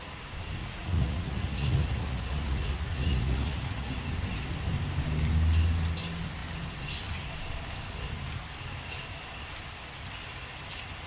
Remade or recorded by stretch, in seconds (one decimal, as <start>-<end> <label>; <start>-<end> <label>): 0.0-0.6 recorded; 0.6-4.0 remade; 4.0-11.1 recorded